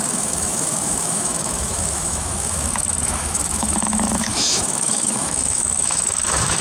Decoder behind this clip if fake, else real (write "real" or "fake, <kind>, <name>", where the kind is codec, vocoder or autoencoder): fake, autoencoder, DAC-VAE